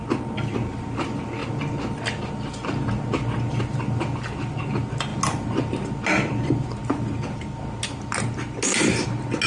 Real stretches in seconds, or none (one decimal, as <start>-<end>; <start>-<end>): 0.0-9.5